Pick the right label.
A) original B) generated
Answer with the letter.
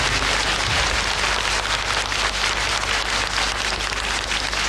A